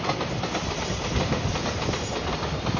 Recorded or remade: recorded